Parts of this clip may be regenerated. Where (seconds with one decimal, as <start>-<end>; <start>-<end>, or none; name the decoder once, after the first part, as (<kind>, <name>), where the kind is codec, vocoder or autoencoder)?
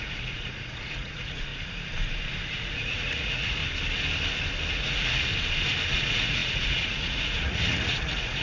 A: 0.0-1.5 (vocoder, Vocos); 2.5-3.6; 4.7-5.3; 5.9-8.4